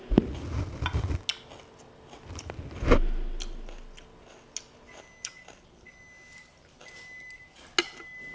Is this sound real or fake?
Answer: real